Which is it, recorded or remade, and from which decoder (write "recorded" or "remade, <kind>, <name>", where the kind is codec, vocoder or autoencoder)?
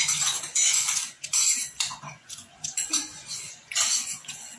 remade, vocoder, Vocos